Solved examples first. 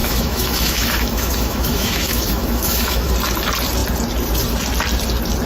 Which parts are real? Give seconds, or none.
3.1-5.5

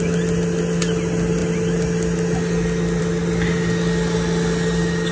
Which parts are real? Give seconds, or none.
0.0-5.1

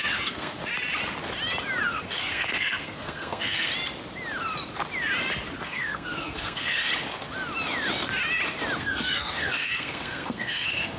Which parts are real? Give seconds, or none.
0.6-1.9; 3.7-5.6; 6.9-8.8

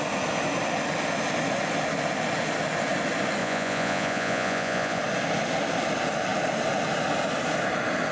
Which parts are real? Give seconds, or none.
0.0-3.4; 5.0-8.1

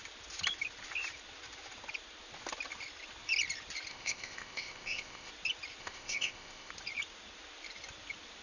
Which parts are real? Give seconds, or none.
0.0-3.9; 5.3-5.8; 6.7-8.4

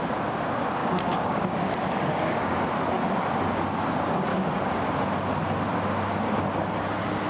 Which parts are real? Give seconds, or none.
0.0-0.8; 2.6-4.3; 4.8-7.3

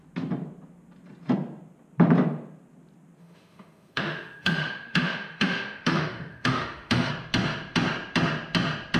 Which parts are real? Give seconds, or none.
0.0-3.2; 7.1-9.0

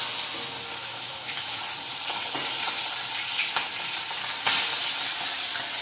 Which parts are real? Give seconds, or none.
0.0-0.8; 1.6-5.8